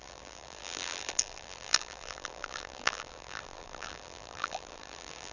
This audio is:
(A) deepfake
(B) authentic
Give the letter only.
A